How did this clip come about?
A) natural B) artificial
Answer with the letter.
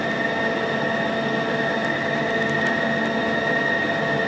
A